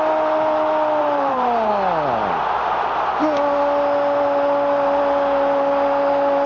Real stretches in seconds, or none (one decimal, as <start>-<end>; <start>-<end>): 0.0-1.0; 1.7-6.5